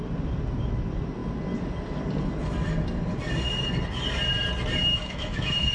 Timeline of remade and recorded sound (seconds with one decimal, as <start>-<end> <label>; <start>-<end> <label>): 0.0-4.8 recorded; 4.8-5.7 remade